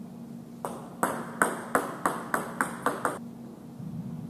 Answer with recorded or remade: recorded